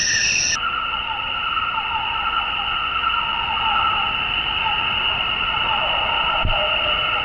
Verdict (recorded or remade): recorded